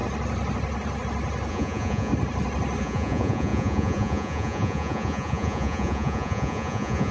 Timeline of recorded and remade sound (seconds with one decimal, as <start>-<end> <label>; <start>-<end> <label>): 0.0-1.5 recorded; 1.5-2.1 remade; 2.1-2.8 recorded; 2.8-7.1 remade